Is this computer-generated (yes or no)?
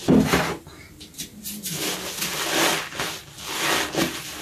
no